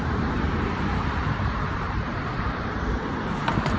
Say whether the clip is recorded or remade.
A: remade